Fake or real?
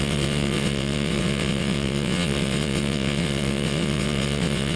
fake